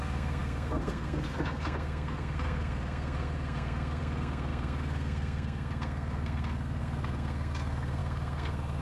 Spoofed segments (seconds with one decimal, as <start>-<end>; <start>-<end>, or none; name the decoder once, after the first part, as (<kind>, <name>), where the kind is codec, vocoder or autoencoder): 0.0-8.8 (codec, SNAC)